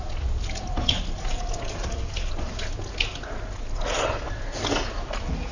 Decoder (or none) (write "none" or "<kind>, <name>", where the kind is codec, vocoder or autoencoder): none